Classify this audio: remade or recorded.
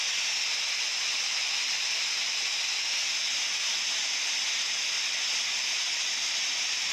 recorded